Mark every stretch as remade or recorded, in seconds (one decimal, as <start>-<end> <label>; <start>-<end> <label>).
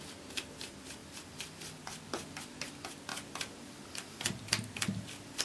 0.0-5.4 recorded